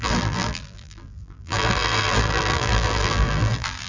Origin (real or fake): fake